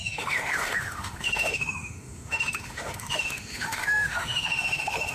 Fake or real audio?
fake